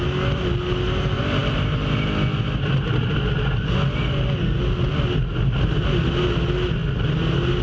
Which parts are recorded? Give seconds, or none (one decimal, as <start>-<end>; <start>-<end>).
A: 0.0-7.6